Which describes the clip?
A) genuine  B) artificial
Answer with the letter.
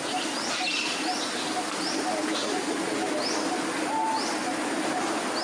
A